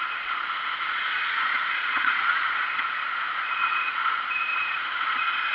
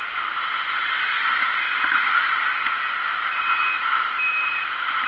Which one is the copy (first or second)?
first